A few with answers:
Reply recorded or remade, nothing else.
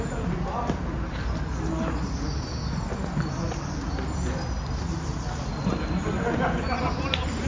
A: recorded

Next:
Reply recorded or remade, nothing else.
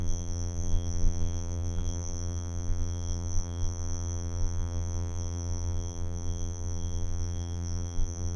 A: remade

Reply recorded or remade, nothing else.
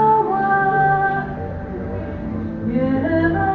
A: recorded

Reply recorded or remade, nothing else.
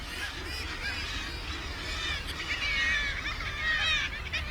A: recorded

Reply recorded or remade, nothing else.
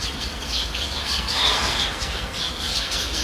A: remade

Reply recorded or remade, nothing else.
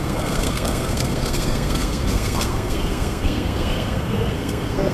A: remade